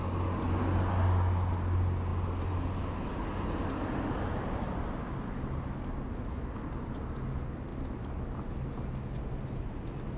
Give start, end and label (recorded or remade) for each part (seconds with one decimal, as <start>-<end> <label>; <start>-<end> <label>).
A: 0.0-10.2 recorded